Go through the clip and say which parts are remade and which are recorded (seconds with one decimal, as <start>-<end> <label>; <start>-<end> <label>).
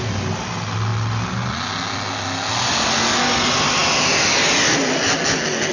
0.0-5.7 recorded